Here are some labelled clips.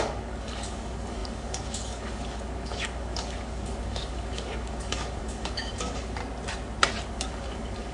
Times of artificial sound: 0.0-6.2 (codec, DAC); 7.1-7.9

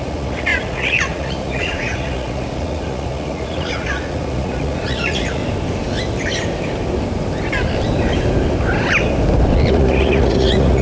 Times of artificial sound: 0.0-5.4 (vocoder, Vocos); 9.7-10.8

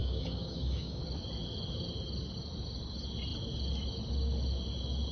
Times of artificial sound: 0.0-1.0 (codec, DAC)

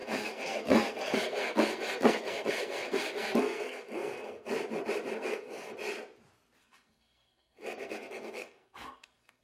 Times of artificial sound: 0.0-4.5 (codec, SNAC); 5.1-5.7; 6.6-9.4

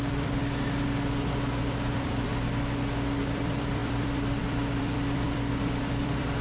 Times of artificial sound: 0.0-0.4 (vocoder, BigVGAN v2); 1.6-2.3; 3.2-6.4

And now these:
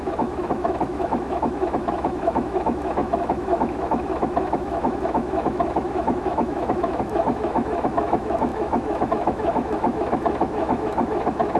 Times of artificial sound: 0.0-11.6 (autoencoder, DAC-VAE)

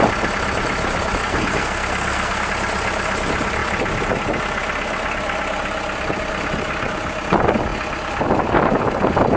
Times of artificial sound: 1.2-2.5 (codec, SNAC)

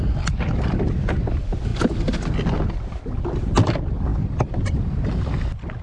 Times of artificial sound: none